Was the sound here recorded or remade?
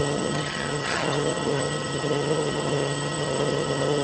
remade